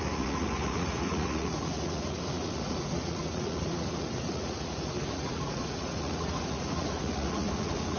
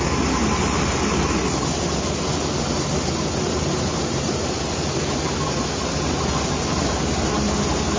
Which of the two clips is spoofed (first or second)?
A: first